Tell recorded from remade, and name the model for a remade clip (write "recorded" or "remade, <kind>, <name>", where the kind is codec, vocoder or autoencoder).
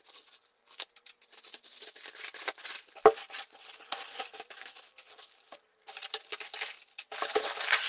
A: recorded